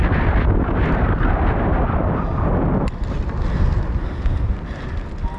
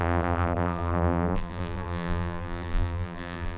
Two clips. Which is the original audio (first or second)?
first